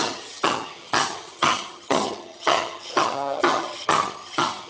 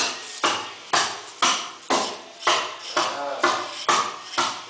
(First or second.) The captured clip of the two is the second